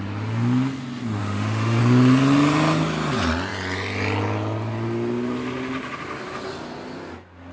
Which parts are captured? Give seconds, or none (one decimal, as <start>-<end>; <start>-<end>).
0.0-1.2; 1.8-7.5